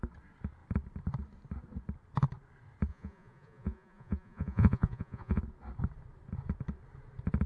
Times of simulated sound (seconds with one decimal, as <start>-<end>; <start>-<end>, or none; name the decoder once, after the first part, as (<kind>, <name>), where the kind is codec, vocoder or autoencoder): 2.9-5.4 (vocoder, Vocos)